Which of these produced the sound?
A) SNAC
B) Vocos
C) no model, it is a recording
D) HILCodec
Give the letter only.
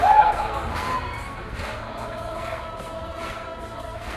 A